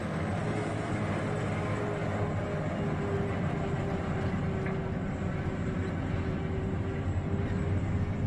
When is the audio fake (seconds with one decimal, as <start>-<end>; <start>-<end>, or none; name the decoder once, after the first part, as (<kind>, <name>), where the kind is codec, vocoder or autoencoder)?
0.4-0.9 (autoencoder, DAC-VAE)